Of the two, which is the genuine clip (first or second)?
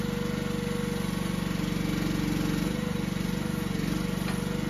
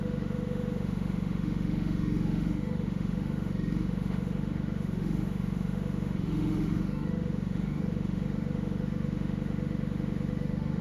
first